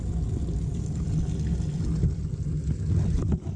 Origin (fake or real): real